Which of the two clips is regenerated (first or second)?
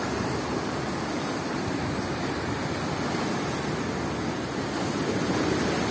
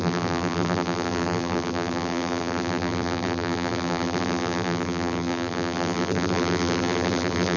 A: second